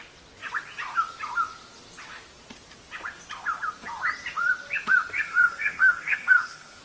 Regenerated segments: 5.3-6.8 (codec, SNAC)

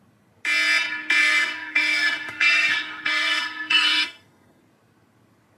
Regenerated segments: 1.2-4.6 (codec, SNAC)

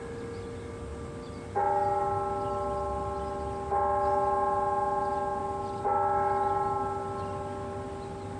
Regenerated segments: none

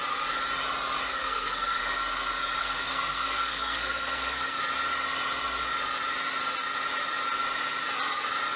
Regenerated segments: 1.2-1.8 (codec, SNAC); 2.6-4.6